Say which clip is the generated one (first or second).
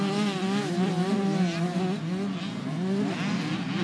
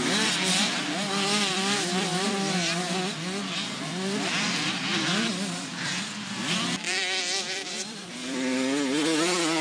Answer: second